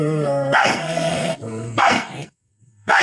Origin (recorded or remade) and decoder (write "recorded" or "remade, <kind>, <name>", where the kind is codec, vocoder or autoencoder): remade, codec, SNAC